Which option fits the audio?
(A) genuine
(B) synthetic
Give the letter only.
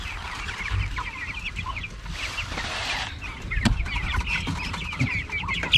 A